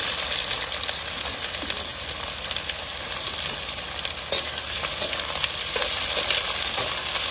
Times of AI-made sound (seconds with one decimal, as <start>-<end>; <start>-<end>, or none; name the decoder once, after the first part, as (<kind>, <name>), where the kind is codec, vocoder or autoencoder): none